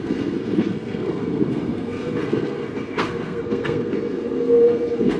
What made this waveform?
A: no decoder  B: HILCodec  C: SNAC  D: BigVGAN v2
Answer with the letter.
C